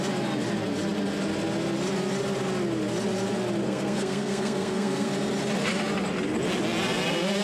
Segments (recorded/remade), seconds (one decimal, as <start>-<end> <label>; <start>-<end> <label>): 0.0-3.6 recorded; 3.6-5.1 remade; 5.1-7.4 recorded